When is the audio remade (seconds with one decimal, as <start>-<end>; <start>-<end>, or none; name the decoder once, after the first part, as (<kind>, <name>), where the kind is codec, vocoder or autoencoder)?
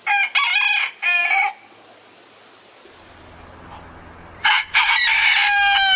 none